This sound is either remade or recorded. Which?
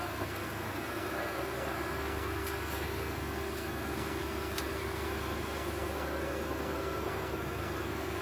remade